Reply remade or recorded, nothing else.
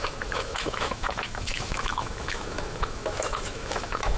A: remade